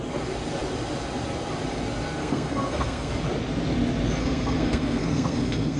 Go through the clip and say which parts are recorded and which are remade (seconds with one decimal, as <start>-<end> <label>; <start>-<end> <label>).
0.0-2.2 recorded; 2.2-3.1 remade; 3.1-4.2 recorded; 4.2-5.8 remade